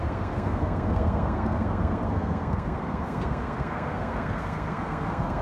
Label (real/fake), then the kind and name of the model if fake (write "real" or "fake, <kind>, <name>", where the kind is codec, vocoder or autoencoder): fake, codec, SNAC